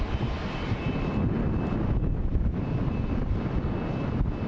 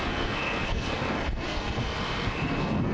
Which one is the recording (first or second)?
first